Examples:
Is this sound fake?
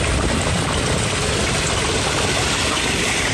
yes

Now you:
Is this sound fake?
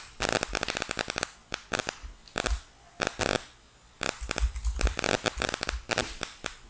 no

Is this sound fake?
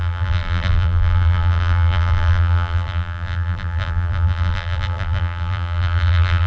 yes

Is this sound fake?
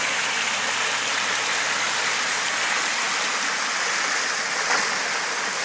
no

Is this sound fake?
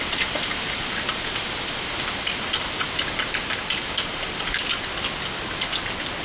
no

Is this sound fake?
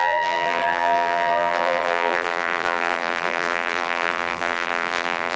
yes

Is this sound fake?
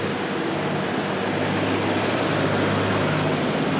no